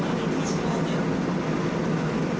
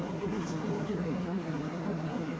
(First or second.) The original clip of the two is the first